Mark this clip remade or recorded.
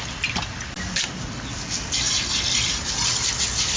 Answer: recorded